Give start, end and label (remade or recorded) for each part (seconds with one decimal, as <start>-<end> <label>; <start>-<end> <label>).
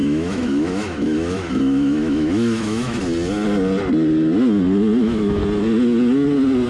0.0-3.0 remade; 3.0-5.0 recorded; 5.0-5.4 remade; 5.4-6.7 recorded